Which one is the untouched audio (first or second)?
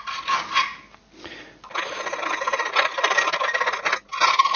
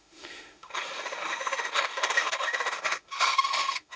first